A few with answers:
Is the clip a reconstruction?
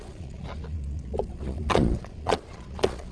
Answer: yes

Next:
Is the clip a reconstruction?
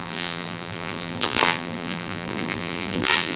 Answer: yes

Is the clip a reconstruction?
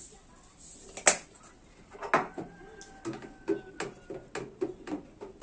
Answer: no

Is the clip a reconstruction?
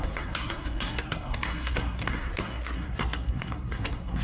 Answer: yes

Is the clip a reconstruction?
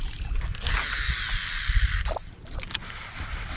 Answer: no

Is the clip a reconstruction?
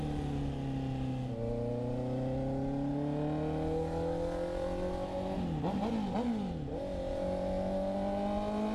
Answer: no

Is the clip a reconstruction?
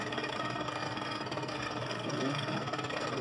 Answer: yes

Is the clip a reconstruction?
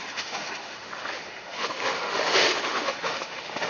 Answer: yes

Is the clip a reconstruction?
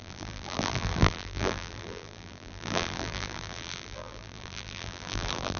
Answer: yes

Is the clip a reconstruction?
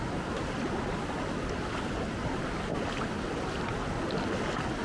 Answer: no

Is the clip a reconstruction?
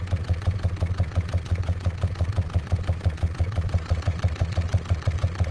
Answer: yes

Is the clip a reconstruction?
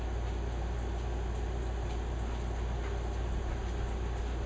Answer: no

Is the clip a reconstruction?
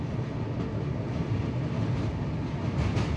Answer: no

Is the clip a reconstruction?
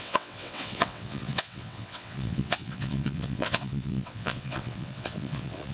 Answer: yes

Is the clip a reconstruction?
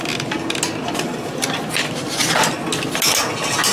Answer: no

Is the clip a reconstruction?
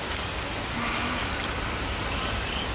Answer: no